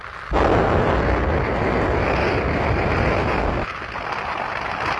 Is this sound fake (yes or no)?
no